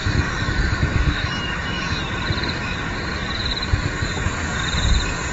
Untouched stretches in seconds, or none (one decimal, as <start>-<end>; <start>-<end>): 2.0-5.3